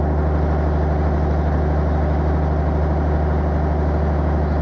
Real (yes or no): yes